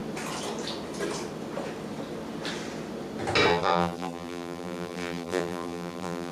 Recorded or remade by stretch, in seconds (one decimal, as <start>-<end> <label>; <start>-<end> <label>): 0.0-3.5 recorded; 3.5-6.3 remade